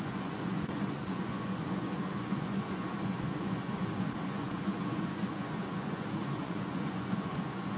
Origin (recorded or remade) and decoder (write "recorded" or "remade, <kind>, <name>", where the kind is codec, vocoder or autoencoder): remade, vocoder, Vocos